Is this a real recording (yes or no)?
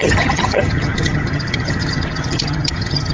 no